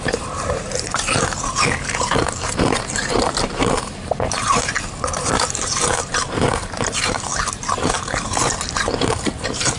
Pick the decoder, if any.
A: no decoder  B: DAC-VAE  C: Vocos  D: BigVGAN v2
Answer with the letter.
D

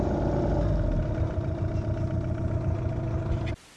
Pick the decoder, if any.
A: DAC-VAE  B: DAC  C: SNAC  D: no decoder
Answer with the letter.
D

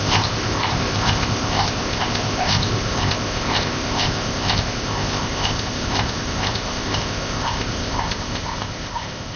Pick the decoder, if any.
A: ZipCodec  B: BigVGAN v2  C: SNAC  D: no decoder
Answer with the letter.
A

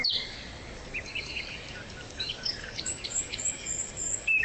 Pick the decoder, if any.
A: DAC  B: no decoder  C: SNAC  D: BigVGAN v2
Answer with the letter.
A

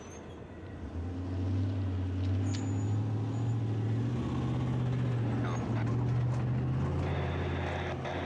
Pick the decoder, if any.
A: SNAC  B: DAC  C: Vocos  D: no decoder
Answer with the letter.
D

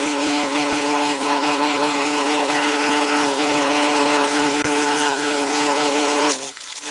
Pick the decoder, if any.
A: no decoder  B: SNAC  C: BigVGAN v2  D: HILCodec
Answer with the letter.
D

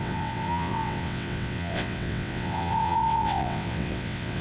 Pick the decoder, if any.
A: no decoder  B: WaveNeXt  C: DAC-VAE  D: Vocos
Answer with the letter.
B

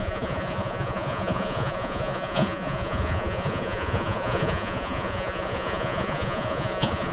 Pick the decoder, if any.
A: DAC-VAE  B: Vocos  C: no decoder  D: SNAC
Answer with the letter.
B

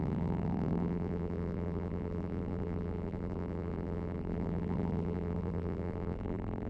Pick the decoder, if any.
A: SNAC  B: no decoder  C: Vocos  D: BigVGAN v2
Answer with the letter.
D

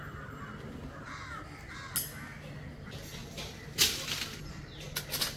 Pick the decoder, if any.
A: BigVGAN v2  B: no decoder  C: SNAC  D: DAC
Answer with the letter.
B